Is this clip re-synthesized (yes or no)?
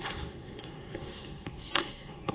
yes